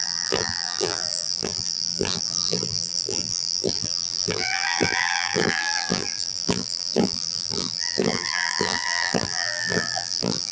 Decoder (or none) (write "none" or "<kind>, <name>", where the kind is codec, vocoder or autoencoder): vocoder, BigVGAN v2